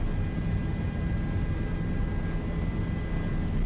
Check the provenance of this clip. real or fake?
real